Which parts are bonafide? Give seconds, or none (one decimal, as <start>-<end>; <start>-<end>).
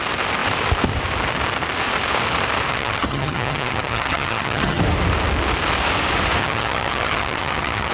0.0-2.7; 4.8-6.4